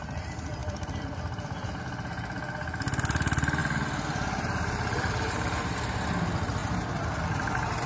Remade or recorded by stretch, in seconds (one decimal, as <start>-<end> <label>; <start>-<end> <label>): 0.0-0.6 recorded; 0.6-1.8 remade; 1.8-3.6 recorded; 3.6-5.1 remade; 5.1-7.9 recorded